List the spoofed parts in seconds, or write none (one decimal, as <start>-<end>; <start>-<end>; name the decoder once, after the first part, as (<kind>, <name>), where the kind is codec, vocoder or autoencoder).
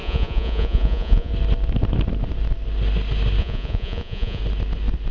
0.0-1.3 (vocoder, Vocos); 3.4-4.4